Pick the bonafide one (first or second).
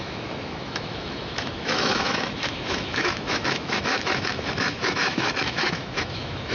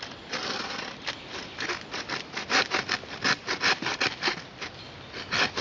second